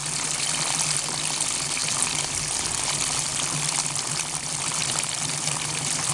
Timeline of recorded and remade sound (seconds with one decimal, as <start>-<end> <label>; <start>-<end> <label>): 0.0-0.6 remade; 0.6-3.3 recorded; 3.3-5.1 remade; 5.1-6.1 recorded